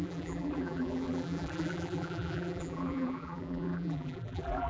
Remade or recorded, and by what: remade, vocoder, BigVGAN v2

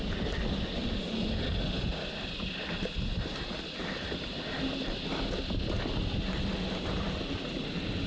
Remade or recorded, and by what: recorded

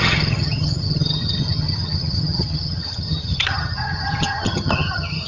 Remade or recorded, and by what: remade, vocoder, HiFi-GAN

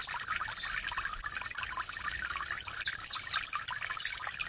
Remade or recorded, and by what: recorded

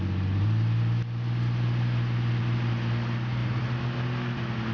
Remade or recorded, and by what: recorded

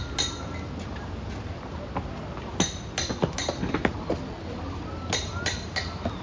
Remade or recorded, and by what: recorded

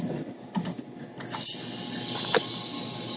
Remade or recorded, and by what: recorded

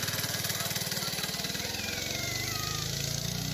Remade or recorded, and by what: recorded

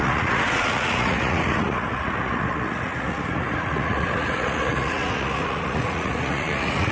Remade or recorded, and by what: remade, vocoder, Vocos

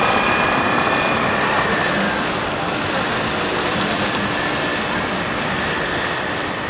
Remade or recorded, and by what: recorded